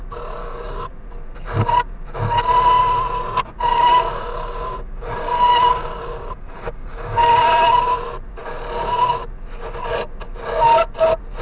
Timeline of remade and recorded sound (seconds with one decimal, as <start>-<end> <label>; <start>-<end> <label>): 0.0-0.4 recorded; 0.4-0.9 remade; 0.9-3.7 recorded; 3.7-7.3 remade; 7.3-11.4 recorded